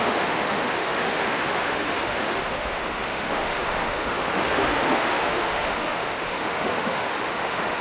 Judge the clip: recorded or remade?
remade